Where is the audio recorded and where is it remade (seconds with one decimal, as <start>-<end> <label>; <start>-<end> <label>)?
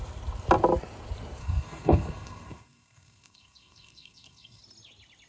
0.0-1.4 recorded; 1.4-4.6 remade; 4.6-5.3 recorded